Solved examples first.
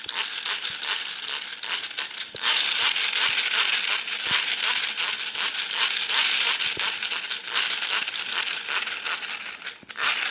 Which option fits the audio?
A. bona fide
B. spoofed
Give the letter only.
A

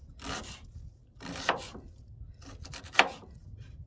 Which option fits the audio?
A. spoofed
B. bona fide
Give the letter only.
B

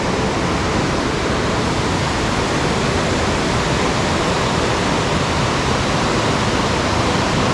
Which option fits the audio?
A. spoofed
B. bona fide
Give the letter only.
A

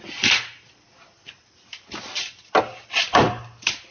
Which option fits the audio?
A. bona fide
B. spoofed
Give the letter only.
A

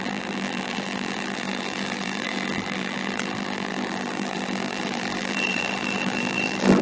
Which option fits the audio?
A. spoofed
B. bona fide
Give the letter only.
A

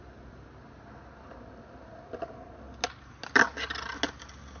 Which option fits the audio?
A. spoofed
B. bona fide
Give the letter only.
B